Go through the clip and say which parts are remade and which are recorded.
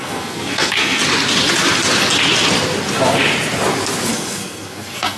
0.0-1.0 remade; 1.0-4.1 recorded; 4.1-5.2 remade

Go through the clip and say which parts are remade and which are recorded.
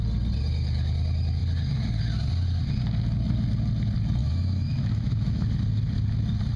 0.0-4.2 recorded; 4.2-5.5 remade; 5.5-6.6 recorded